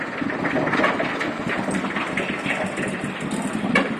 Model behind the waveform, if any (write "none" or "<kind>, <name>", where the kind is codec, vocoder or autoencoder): vocoder, BigVGAN v2